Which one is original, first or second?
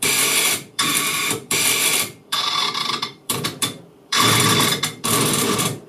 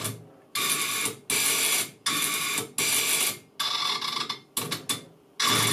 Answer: second